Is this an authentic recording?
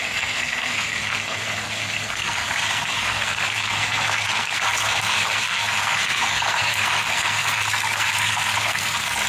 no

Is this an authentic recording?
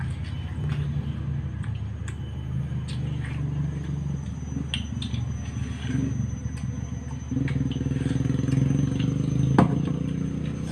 yes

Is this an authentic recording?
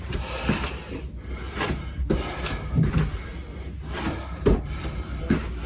yes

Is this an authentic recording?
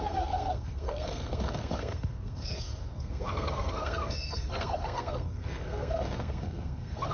no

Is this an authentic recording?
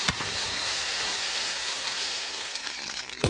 no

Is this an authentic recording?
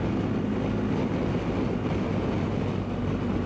yes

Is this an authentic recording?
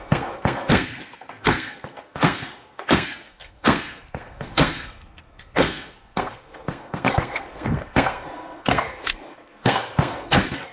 no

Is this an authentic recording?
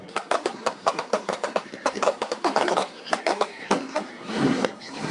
no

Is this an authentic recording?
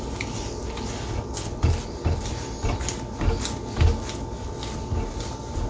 yes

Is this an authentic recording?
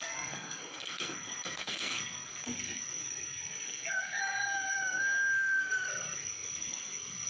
no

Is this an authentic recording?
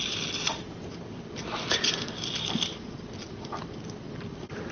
yes